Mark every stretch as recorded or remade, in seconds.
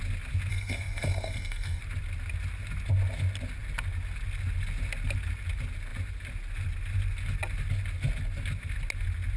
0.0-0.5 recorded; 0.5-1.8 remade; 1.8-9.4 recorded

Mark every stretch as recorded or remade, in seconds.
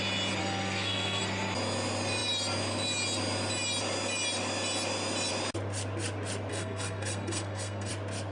0.0-0.4 recorded; 0.4-1.2 remade; 1.2-6.5 recorded; 6.5-7.9 remade; 7.9-8.3 recorded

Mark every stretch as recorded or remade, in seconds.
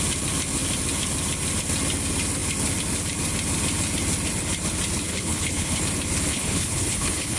0.0-5.1 recorded; 5.1-5.8 remade; 5.8-6.3 recorded; 6.3-7.4 remade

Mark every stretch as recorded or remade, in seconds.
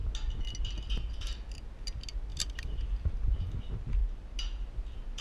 0.0-2.3 recorded; 2.3-3.1 remade; 3.1-5.2 recorded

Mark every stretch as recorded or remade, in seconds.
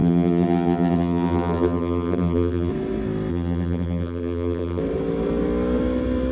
0.0-2.7 remade; 2.7-3.3 recorded; 3.3-4.8 remade; 4.8-6.3 recorded